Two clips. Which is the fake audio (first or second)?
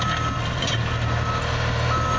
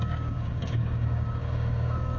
second